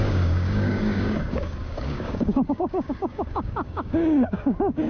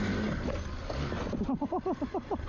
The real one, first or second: second